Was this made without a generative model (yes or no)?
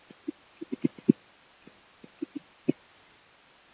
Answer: yes